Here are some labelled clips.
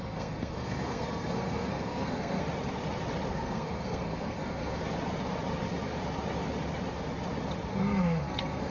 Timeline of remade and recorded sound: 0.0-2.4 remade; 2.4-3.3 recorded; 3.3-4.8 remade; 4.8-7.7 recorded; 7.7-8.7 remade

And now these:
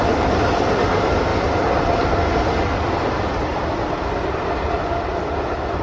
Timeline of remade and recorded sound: 0.0-5.8 recorded

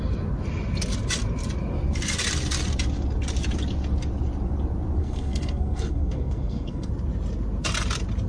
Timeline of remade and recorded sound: 0.0-5.0 recorded; 5.0-6.9 remade; 6.9-8.3 recorded